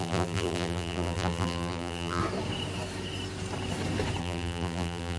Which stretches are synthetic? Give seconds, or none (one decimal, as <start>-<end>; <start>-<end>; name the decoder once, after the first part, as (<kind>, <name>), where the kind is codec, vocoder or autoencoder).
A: 0.0-2.2 (vocoder, BigVGAN v2); 4.2-5.2